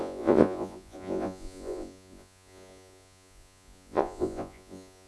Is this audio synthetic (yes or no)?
yes